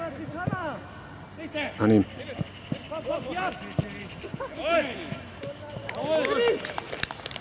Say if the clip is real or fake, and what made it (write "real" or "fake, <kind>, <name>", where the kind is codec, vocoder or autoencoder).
real